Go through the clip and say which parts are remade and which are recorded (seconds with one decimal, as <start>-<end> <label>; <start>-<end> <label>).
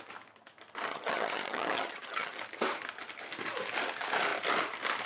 0.0-0.9 recorded; 0.9-2.4 remade; 2.4-5.1 recorded